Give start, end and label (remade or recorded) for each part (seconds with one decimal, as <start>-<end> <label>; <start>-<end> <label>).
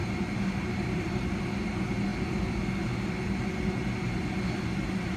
0.0-1.4 remade; 1.4-5.2 recorded